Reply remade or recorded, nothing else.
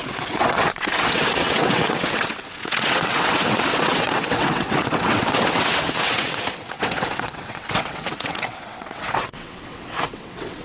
remade